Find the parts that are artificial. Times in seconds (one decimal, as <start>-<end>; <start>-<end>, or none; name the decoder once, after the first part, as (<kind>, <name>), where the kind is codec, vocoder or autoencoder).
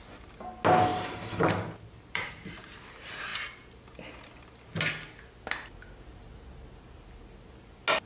0.9-2.3 (vocoder, BigVGAN v2)